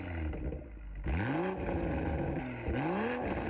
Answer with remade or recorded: recorded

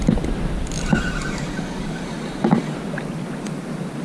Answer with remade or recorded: recorded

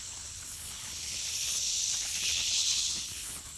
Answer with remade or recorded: remade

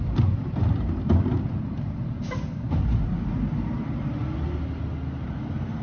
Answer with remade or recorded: recorded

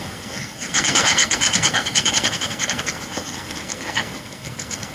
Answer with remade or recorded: remade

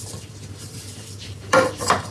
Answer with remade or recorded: remade